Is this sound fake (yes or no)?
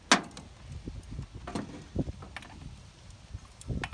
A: no